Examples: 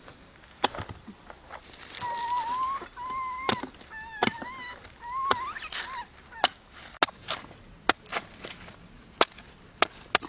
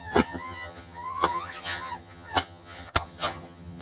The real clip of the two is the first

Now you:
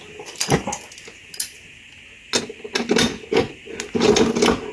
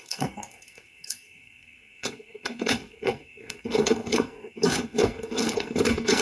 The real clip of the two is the first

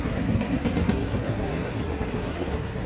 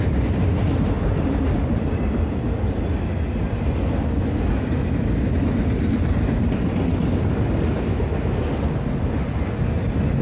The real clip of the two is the second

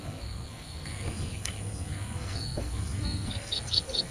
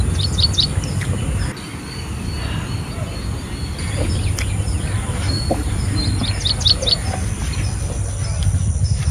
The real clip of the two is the second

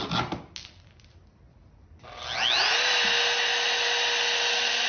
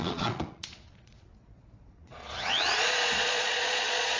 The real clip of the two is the first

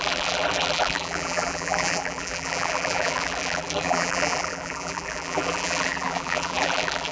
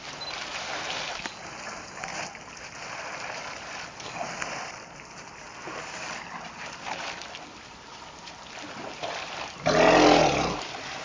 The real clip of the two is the second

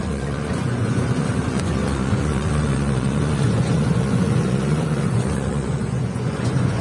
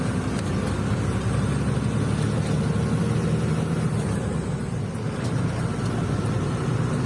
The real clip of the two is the second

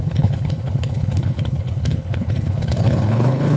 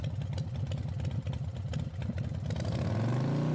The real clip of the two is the second